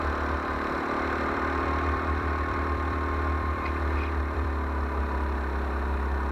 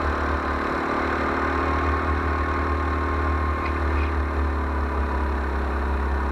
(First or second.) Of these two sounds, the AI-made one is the first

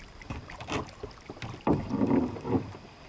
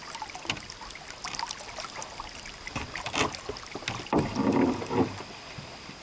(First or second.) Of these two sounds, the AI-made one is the first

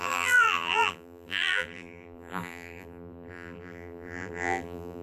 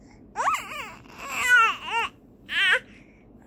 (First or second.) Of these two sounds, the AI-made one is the first